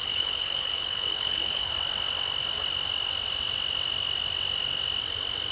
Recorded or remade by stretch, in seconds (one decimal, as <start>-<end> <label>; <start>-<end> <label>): 0.0-1.7 remade; 1.7-5.5 recorded